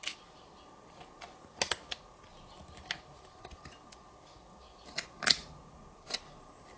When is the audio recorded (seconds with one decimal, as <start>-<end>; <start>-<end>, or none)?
0.0-6.8

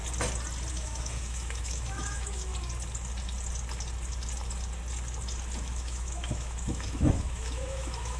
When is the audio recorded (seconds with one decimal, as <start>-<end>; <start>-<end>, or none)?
0.0-0.7; 2.5-5.6

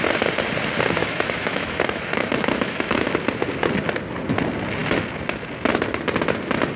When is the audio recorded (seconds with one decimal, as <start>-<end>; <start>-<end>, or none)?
0.0-1.0; 3.2-6.8

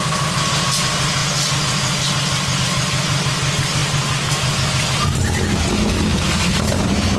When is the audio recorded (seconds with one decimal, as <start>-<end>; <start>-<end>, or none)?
0.0-7.2

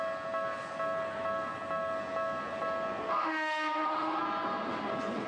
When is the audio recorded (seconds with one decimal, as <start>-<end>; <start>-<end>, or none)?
0.0-3.0; 4.2-5.3